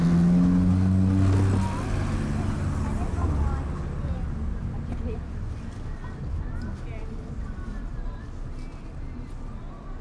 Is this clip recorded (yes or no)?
yes